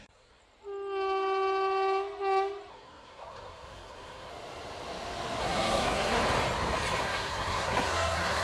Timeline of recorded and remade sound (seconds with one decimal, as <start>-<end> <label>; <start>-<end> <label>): 0.0-0.4 remade; 0.4-2.7 recorded; 2.7-4.3 remade; 4.3-5.4 recorded; 5.4-6.2 remade; 6.2-7.0 recorded; 7.0-8.4 remade